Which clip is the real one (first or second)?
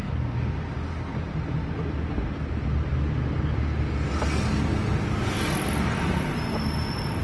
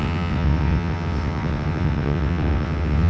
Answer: first